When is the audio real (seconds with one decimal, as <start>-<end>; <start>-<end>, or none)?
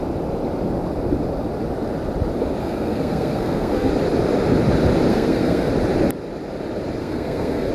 0.0-2.6; 3.9-5.1; 5.7-7.0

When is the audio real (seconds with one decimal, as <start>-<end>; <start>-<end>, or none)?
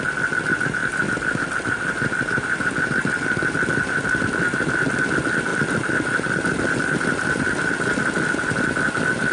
0.0-9.3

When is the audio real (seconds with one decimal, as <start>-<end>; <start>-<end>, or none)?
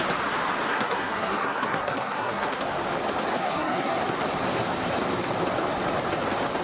0.0-0.7; 2.6-3.3; 4.0-6.6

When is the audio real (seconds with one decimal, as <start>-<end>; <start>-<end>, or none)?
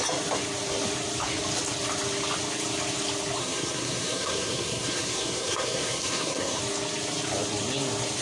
0.0-3.4; 6.6-8.2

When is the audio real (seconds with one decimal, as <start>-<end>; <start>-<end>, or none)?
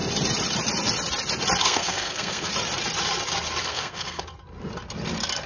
0.0-1.6; 2.5-3.6; 4.2-5.5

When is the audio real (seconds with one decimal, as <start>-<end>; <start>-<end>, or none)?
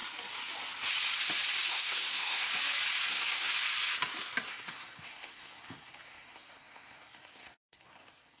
0.0-1.7; 2.5-3.1; 3.5-4.5